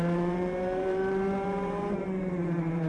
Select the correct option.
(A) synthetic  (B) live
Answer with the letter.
A